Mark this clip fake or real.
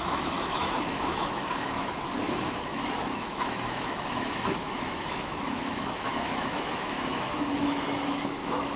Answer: fake